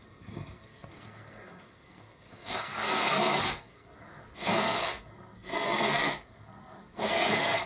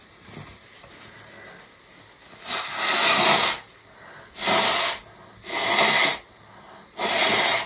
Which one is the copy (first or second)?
first